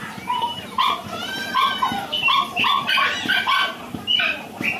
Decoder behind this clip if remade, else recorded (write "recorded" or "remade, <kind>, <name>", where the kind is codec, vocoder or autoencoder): remade, vocoder, BigVGAN v2